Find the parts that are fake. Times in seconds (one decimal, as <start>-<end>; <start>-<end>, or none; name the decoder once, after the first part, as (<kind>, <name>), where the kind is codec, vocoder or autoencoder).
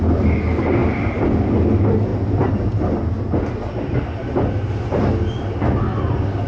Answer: none